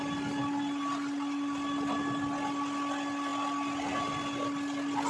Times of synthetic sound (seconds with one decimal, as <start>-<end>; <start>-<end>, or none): none